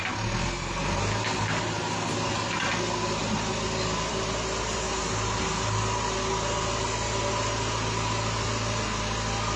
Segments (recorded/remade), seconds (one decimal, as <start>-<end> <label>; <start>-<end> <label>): 0.0-9.6 recorded